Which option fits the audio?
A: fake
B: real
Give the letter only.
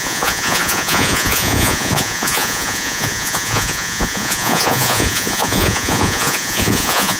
A